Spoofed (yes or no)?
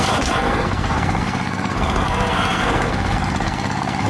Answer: yes